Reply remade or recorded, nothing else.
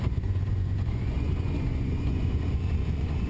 remade